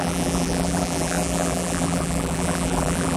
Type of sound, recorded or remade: remade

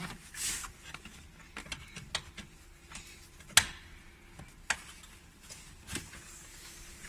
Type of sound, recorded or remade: recorded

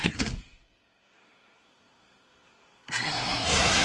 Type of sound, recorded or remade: remade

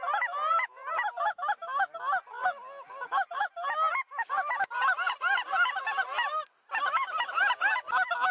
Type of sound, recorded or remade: recorded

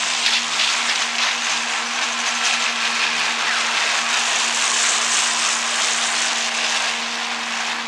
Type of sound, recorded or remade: recorded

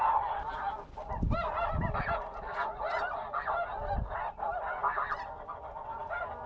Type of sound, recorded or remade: recorded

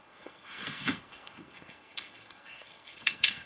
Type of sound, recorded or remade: remade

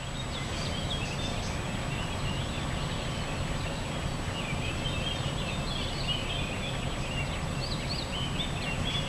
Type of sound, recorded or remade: recorded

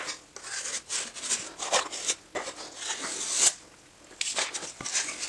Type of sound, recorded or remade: recorded